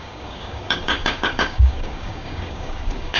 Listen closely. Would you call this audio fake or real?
fake